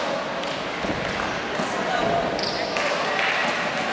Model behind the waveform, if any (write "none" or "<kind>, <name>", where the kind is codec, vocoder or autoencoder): none